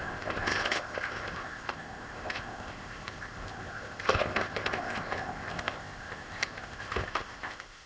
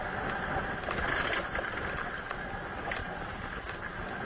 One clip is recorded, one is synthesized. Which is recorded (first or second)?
second